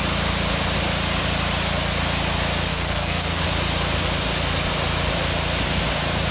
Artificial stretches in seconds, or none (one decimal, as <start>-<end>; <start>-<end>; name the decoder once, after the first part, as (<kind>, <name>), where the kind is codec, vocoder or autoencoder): 2.7-3.4 (codec, SNAC)